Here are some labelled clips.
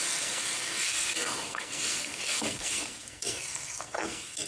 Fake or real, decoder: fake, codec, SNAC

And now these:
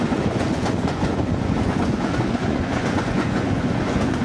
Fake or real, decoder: fake, vocoder, Vocos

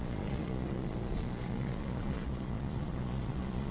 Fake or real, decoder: fake, vocoder, Vocos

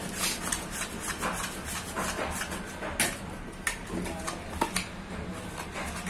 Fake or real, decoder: real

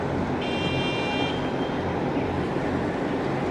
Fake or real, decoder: real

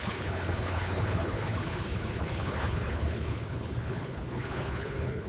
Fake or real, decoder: fake, codec, HILCodec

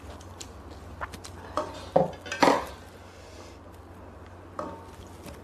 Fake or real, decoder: real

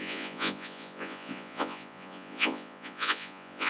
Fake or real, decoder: fake, vocoder, Vocos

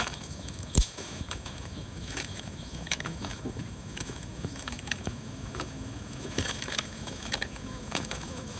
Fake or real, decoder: fake, autoencoder, DAC-VAE